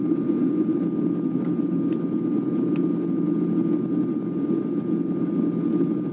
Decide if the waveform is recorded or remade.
recorded